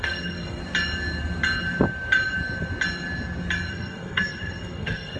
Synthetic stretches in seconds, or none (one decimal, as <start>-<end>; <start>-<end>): 0.0-0.6; 3.7-5.2